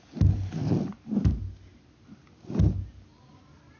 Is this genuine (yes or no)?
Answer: yes